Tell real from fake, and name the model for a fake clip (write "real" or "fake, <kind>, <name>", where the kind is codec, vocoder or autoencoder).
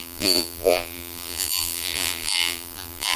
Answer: fake, vocoder, BigVGAN v2